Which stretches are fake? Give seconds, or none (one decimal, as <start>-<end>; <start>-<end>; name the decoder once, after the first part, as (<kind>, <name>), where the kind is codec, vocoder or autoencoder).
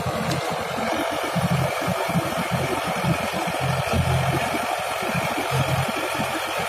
none